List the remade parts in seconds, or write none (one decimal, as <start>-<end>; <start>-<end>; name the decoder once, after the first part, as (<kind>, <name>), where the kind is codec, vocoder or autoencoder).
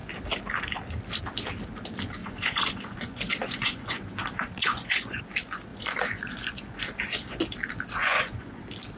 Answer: 2.2-5.2 (vocoder, Vocos); 5.7-7.4; 8.0-8.6